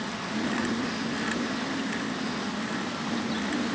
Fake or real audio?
real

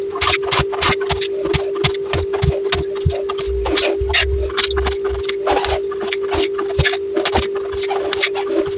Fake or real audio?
real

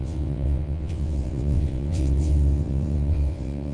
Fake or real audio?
fake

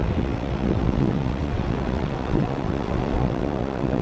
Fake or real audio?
fake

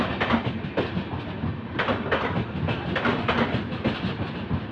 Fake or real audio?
real